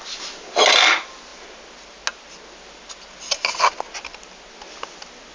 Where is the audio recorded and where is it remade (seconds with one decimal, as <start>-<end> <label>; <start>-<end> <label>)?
0.0-5.3 recorded